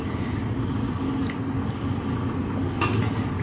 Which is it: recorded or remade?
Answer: recorded